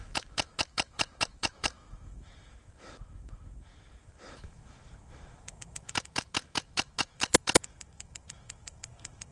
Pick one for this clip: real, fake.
fake